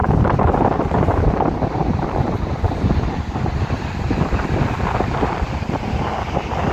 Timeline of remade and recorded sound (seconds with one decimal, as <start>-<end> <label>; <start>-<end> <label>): 0.0-6.7 recorded